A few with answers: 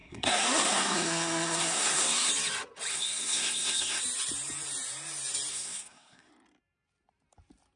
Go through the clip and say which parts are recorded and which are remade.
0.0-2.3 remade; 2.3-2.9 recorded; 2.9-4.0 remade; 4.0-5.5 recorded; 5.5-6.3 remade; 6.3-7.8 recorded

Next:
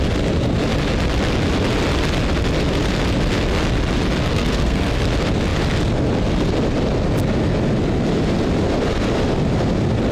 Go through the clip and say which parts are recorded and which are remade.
0.0-4.3 recorded; 4.3-5.0 remade; 5.0-10.1 recorded

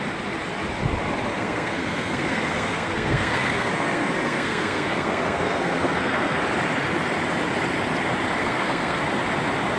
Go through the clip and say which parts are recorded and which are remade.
0.0-1.3 recorded; 1.3-6.4 remade; 6.4-8.4 recorded; 8.4-9.0 remade; 9.0-9.8 recorded

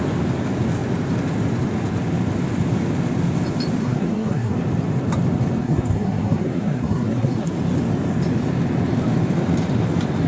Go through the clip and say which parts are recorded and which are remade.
0.0-3.8 recorded; 3.8-4.5 remade; 4.5-5.6 recorded; 5.6-7.5 remade; 7.5-10.3 recorded

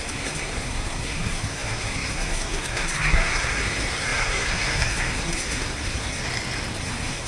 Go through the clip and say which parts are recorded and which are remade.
0.0-6.2 remade; 6.2-6.8 recorded; 6.8-7.3 remade

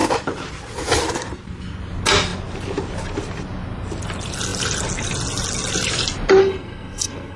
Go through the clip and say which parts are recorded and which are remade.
0.0-6.4 recorded; 6.4-7.4 remade